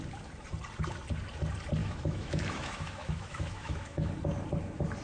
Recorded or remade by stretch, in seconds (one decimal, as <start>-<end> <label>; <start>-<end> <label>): 0.0-1.8 recorded; 1.8-4.1 remade; 4.1-5.0 recorded